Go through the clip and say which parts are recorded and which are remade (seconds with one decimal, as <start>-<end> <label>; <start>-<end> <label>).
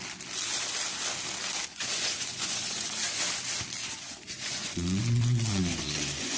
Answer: 0.0-1.7 recorded; 1.7-3.2 remade; 3.2-3.8 recorded; 3.8-6.4 remade